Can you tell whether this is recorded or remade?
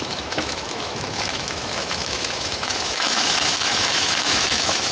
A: remade